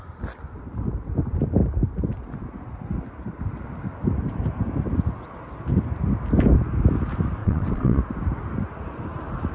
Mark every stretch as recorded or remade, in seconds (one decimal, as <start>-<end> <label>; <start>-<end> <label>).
0.0-7.4 recorded; 7.4-8.0 remade; 8.0-9.5 recorded